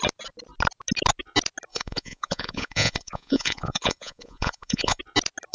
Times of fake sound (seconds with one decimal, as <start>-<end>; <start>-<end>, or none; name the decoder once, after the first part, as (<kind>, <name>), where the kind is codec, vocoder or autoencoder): 1.7-5.0 (vocoder, Vocos)